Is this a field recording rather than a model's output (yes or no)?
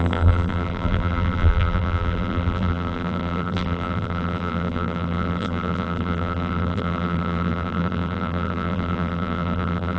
no